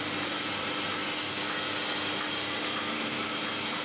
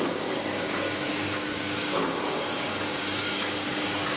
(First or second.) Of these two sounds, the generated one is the second